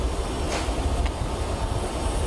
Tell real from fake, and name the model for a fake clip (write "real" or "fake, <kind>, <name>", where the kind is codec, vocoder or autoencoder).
real